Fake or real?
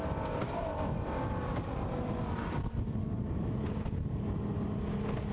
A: real